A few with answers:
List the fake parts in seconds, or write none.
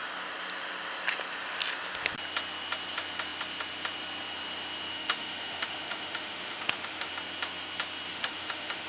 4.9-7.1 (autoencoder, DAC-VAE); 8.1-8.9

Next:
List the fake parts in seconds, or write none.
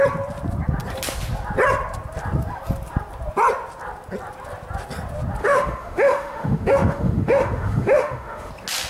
5.4-8.5 (autoencoder, DAC-VAE)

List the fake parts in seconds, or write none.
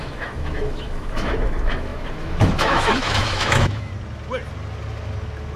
0.0-3.9 (autoencoder, DAC-VAE)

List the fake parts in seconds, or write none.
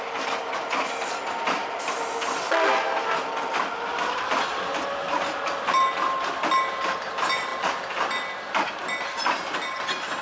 none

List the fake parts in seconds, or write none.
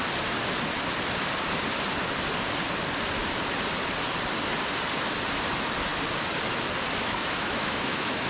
7.0-8.3 (autoencoder, DAC-VAE)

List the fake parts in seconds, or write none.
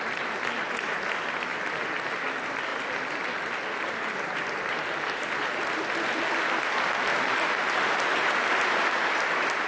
none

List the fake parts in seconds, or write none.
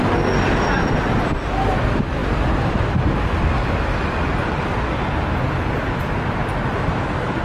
none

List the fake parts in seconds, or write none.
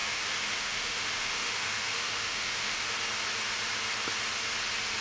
0.0-2.9 (autoencoder, DAC-VAE)